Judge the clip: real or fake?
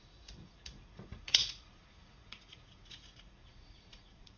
fake